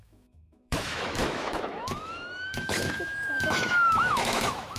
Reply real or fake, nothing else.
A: fake